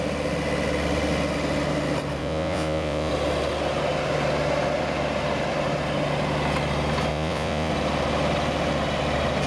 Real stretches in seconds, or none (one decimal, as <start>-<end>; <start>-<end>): 0.0-2.2; 3.1-7.1; 7.7-9.5